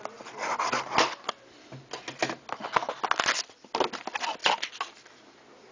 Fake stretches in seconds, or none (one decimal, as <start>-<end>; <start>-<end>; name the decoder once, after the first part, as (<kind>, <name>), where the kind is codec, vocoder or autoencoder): none